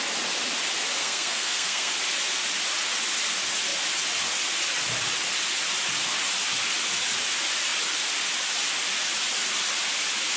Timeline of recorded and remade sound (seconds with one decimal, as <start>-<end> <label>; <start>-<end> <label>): 0.0-1.0 recorded; 1.0-1.9 remade; 1.9-10.4 recorded